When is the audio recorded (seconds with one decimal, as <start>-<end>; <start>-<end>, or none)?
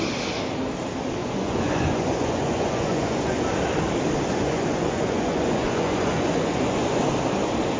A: 0.0-1.2; 3.4-4.3; 7.0-7.8